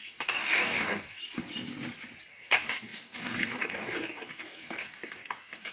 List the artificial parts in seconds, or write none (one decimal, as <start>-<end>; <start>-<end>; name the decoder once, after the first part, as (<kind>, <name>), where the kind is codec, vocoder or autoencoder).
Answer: 0.0-1.2 (codec, DAC); 2.3-5.7